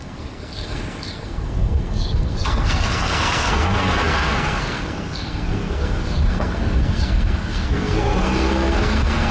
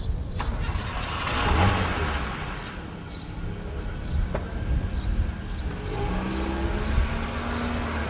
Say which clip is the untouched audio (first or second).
second